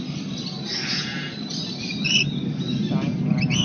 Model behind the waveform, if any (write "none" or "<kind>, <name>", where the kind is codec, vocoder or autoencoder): none